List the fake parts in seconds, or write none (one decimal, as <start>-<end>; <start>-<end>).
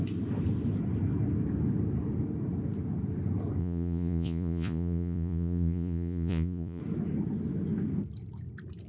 3.6-6.8